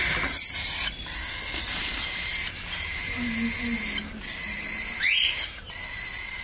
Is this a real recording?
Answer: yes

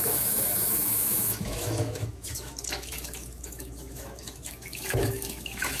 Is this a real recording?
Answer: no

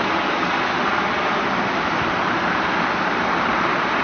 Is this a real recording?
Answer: yes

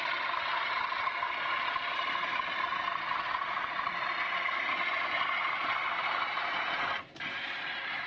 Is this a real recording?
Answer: no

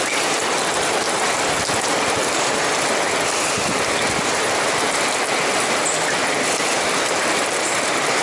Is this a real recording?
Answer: yes